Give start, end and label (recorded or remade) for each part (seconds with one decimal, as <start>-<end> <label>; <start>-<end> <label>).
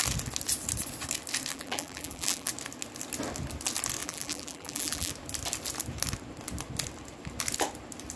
0.0-1.5 recorded; 1.5-2.5 remade; 2.5-4.0 recorded; 4.0-5.1 remade; 5.1-8.2 recorded